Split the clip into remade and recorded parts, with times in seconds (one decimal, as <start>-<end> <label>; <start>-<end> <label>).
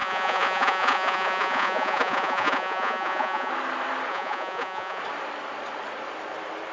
0.0-3.5 remade; 3.5-4.1 recorded; 4.1-5.0 remade; 5.0-6.7 recorded